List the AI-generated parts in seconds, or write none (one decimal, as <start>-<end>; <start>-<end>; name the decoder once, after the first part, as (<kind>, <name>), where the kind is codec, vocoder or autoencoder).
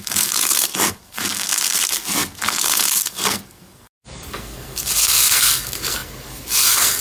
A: 0.0-7.0 (codec, SNAC)